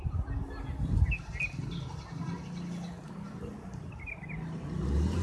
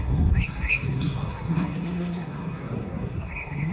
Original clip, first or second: first